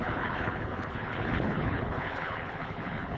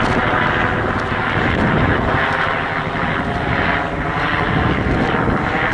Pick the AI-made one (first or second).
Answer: first